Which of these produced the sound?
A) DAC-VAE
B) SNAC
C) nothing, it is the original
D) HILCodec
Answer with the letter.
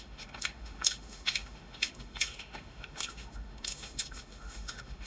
A